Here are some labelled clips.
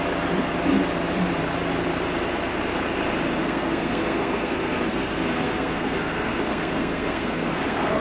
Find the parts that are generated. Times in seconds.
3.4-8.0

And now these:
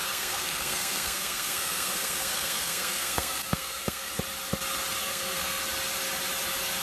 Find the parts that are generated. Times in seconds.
0.0-4.1; 5.0-5.6

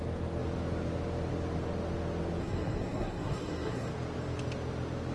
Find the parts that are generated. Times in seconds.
2.4-3.9

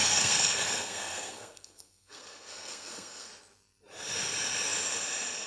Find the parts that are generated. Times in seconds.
0.0-3.3

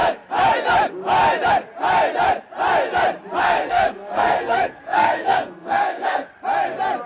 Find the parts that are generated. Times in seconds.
3.4-6.3

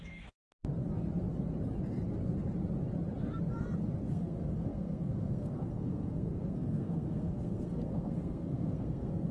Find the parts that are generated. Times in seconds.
0.0-0.4; 4.1-9.3